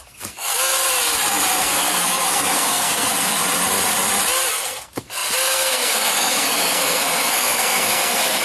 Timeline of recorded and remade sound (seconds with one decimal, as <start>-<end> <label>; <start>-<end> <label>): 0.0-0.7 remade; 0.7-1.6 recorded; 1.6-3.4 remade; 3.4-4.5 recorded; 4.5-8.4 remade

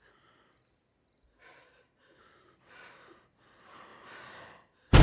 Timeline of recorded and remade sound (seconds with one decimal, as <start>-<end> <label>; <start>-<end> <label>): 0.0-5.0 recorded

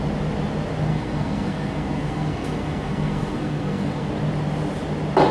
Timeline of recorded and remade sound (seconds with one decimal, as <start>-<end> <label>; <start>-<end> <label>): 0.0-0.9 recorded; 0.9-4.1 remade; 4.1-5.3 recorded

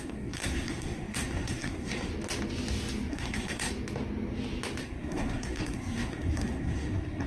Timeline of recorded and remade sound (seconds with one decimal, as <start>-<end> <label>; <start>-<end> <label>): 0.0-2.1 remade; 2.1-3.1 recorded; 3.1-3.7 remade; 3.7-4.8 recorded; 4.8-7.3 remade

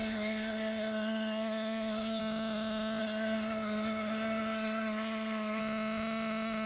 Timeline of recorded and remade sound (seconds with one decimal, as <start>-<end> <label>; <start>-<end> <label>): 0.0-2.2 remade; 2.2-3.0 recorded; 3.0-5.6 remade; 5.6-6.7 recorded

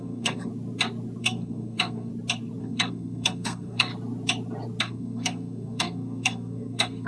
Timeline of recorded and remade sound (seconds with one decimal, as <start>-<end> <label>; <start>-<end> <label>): 0.0-0.5 remade; 0.5-1.2 recorded; 1.2-2.1 remade; 2.1-2.6 recorded; 2.6-3.9 remade; 3.9-4.8 recorded; 4.8-7.1 remade